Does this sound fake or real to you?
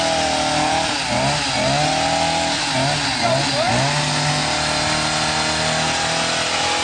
real